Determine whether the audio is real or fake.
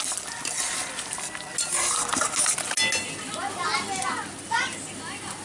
real